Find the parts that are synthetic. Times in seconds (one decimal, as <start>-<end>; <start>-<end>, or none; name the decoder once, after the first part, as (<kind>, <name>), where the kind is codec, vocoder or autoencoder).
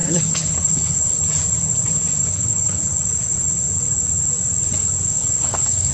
0.0-1.2 (codec, HILCodec); 2.2-2.9; 5.2-5.9